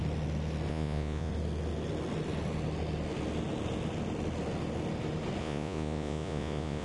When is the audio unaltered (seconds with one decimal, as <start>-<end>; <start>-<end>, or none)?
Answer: 0.0-0.7; 1.3-5.4